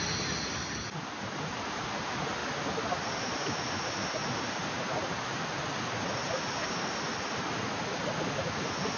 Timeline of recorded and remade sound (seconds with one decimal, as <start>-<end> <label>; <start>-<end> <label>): 0.0-9.0 recorded